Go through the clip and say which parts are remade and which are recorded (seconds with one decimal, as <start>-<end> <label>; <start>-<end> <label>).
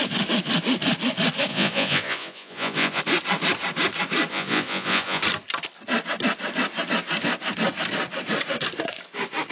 0.0-1.5 recorded; 1.5-3.0 remade; 3.0-4.3 recorded; 4.3-5.2 remade; 5.2-9.5 recorded